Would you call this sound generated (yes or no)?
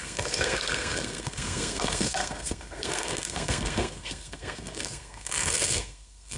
yes